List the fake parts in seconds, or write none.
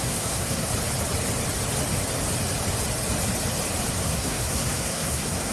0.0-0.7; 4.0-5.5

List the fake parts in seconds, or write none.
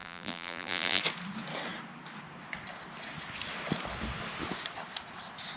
0.0-1.0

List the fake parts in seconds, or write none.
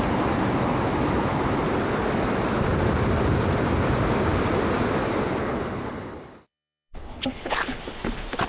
5.4-7.8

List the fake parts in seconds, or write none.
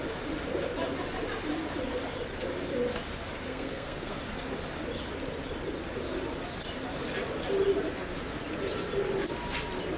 3.5-4.2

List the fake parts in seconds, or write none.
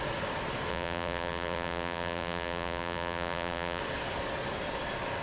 0.7-3.8